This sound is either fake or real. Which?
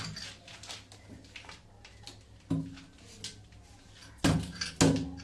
real